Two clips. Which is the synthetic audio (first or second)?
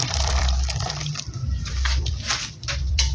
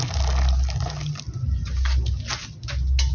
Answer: first